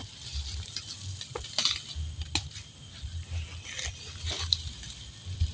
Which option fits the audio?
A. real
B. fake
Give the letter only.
A